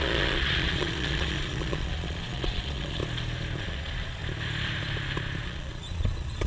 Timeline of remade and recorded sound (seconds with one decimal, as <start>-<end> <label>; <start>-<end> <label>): 0.0-3.0 remade; 3.0-3.6 recorded; 3.6-4.2 remade; 4.2-5.4 recorded; 5.4-6.5 remade